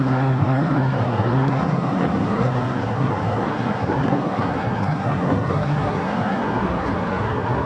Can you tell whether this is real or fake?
fake